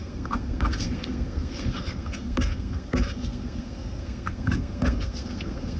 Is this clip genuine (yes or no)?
no